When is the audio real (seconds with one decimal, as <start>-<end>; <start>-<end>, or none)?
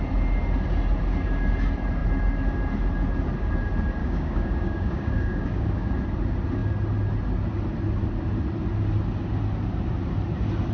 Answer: 0.0-4.0; 5.9-10.7